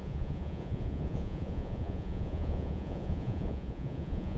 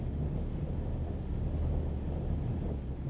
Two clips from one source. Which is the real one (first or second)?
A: second